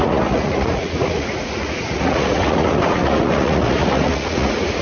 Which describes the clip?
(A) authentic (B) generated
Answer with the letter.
B